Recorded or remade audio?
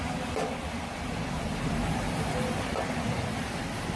remade